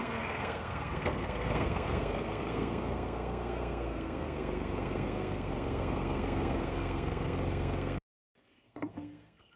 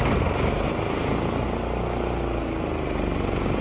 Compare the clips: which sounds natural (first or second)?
second